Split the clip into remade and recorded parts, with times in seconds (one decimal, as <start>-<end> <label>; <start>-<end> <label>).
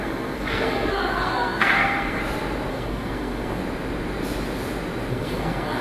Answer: 0.0-2.2 remade; 2.2-2.7 recorded; 2.7-3.6 remade; 3.6-5.1 recorded; 5.1-5.8 remade